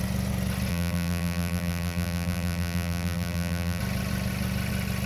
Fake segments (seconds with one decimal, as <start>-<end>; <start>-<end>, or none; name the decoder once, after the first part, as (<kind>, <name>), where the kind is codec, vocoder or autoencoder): 0.7-3.8 (vocoder, BigVGAN v2)